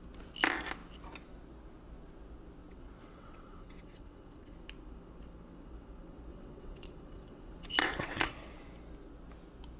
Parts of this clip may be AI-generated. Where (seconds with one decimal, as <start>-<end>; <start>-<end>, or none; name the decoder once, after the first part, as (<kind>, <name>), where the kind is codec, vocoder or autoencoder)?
2.6-4.5 (vocoder, WaveNeXt); 6.3-8.3